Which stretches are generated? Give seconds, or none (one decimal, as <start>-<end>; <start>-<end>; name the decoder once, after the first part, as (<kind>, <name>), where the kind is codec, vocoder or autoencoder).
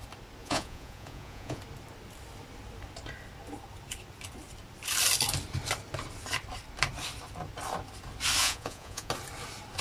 0.4-1.6 (vocoder, Vocos); 8.4-9.1